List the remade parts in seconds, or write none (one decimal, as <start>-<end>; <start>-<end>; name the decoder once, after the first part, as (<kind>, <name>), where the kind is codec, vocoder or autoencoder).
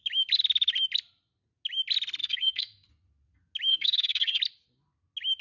2.2-2.9 (codec, SNAC); 3.7-4.4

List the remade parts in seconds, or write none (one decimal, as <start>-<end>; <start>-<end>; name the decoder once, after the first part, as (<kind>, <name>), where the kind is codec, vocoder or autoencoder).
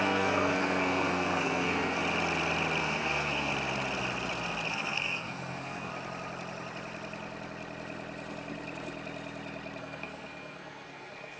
0.0-2.0 (codec, SNAC); 2.8-3.5; 4.7-5.9; 9.8-11.4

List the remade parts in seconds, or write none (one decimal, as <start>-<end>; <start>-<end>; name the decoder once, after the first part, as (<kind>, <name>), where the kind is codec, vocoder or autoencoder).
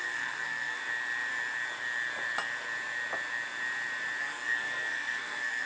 0.0-0.8 (codec, SNAC); 4.2-5.7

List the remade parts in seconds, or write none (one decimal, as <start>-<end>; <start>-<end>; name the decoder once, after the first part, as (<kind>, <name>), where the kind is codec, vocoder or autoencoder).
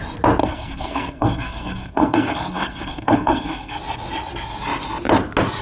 0.4-3.8 (codec, SNAC)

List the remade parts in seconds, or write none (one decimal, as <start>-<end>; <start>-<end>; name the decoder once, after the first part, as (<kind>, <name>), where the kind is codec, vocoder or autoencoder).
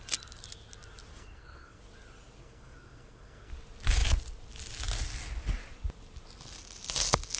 1.1-1.8 (codec, SNAC); 2.4-3.5